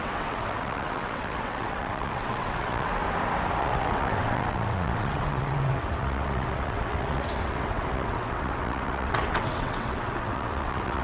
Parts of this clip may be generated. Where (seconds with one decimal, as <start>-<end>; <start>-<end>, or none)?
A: 0.0-3.0; 3.6-11.0